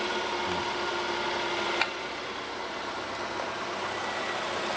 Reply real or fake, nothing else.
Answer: real